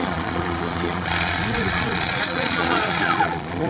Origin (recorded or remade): remade